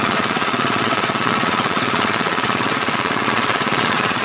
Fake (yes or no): yes